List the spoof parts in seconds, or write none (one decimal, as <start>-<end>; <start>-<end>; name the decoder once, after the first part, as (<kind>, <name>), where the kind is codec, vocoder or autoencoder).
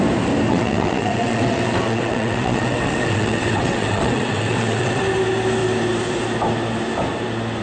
0.5-5.0 (vocoder, WaveNeXt)